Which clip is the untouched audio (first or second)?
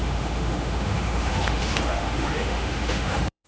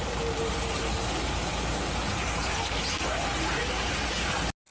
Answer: second